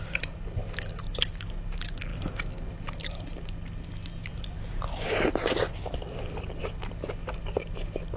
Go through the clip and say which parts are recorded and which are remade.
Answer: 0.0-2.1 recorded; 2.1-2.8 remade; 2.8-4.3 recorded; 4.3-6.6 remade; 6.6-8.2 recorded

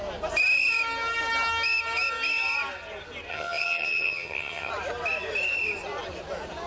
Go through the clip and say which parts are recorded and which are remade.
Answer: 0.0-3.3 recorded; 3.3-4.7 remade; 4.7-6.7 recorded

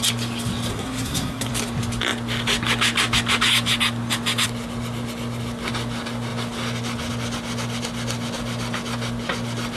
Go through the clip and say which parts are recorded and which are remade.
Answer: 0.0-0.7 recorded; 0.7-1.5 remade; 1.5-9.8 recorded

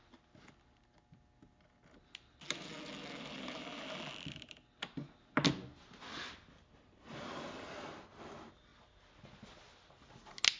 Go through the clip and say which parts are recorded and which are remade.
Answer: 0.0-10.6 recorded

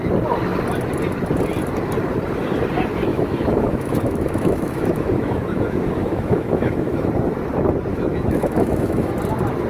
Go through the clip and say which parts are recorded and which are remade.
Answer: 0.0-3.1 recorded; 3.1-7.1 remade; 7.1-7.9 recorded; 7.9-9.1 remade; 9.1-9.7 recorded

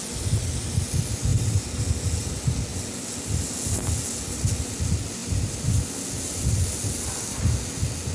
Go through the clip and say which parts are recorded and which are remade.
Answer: 0.0-1.3 recorded; 1.3-1.9 remade; 1.9-5.2 recorded; 5.2-5.9 remade; 5.9-8.1 recorded

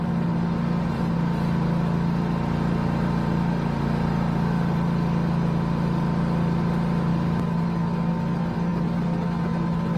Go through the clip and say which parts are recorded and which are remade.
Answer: 0.0-10.0 recorded

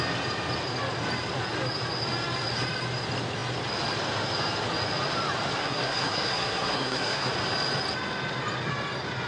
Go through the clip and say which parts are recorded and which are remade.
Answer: 0.0-5.6 recorded; 5.6-7.3 remade; 7.3-9.3 recorded